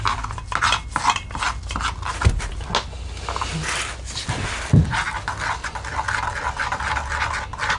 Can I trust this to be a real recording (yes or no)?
yes